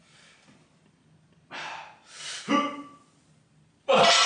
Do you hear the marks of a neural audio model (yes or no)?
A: no